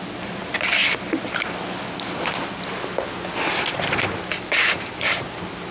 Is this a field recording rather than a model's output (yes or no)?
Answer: yes